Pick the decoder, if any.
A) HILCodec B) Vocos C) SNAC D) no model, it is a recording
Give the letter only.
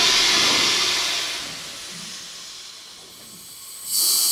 D